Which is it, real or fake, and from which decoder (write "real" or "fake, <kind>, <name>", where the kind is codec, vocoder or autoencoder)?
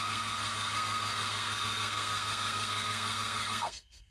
fake, codec, SNAC